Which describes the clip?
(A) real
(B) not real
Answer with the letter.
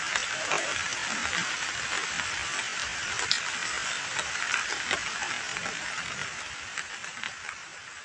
A